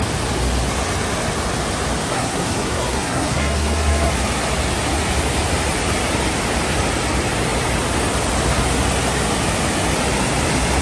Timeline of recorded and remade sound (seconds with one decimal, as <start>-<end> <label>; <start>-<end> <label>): 0.0-2.1 recorded; 2.1-4.1 remade; 4.1-10.8 recorded